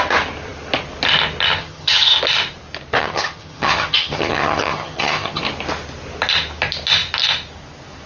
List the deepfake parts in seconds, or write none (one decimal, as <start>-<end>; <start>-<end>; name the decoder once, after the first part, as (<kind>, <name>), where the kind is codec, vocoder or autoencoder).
1.6-2.2 (vocoder, HiFi-GAN); 3.0-5.4